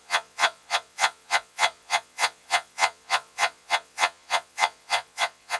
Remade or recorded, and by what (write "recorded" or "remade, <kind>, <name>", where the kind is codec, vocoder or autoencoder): remade, vocoder, Vocos